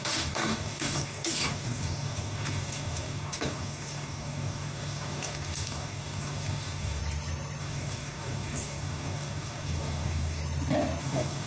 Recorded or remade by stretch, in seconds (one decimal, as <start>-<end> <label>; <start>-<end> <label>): 0.0-7.0 remade; 7.0-7.6 recorded; 7.6-10.4 remade; 10.4-11.0 recorded; 11.0-11.5 remade